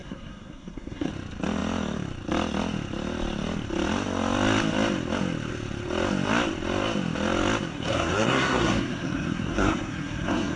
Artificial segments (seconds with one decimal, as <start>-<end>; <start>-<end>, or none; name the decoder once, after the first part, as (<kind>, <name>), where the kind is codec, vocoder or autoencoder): 0.0-1.1 (codec, SNAC); 7.7-10.6